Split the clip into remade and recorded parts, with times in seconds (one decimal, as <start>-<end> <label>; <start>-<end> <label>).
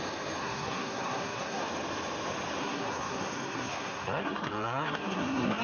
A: 0.0-0.4 recorded; 0.4-1.6 remade; 1.6-2.6 recorded; 2.6-5.6 remade